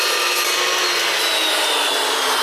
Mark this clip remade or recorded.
recorded